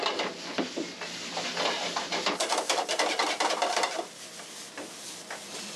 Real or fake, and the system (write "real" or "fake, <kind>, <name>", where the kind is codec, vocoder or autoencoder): real